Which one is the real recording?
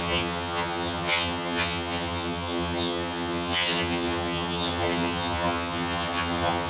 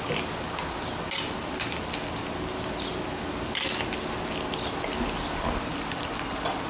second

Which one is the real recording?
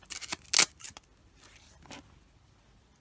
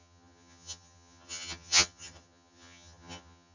first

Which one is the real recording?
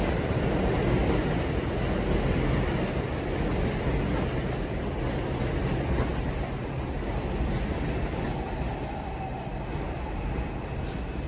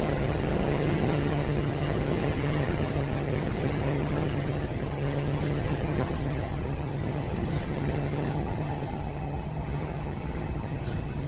first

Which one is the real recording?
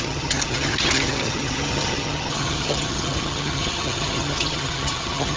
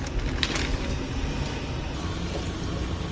second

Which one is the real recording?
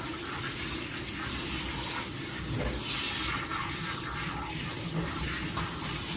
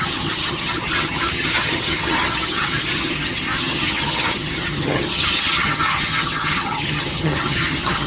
first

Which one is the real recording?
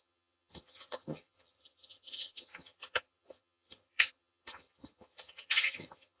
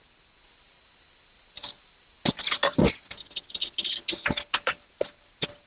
second